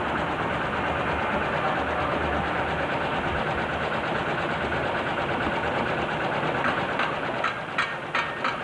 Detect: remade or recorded recorded